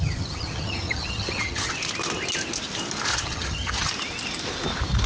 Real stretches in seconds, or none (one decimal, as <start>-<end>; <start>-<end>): 1.7-3.1; 3.9-5.1